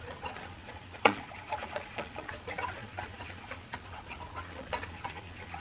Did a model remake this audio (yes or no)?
yes